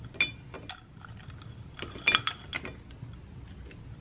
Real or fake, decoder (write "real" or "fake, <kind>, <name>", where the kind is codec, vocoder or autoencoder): real